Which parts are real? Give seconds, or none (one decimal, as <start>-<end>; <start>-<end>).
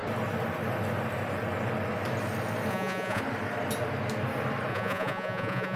0.0-2.7; 3.2-4.7